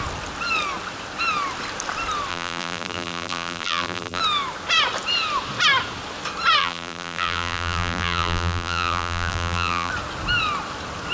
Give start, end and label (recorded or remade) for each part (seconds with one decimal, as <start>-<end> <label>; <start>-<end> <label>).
0.0-2.3 recorded; 2.3-4.2 remade; 4.2-6.6 recorded; 6.6-9.9 remade; 9.9-11.1 recorded